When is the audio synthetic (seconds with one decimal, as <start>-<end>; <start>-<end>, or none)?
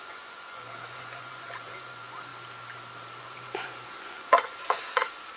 0.0-2.3; 3.2-5.4